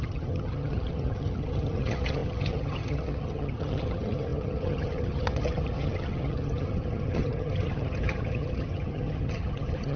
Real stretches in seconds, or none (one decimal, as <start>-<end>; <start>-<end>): none